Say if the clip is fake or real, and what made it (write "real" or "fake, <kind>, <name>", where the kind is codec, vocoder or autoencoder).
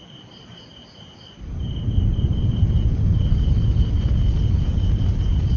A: real